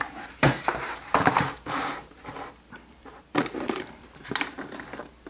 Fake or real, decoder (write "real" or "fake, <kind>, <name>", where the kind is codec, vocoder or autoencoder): fake, vocoder, BigVGAN v2